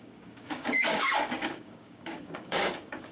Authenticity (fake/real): fake